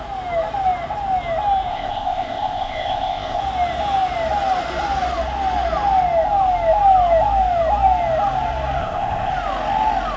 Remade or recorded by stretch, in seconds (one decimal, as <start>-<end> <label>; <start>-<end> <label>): 0.0-1.7 recorded; 1.7-3.4 remade; 3.4-8.8 recorded; 8.8-9.3 remade; 9.3-10.2 recorded